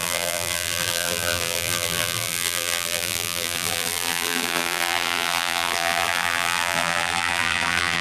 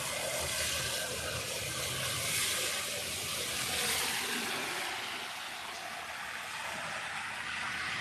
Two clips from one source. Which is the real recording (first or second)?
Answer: second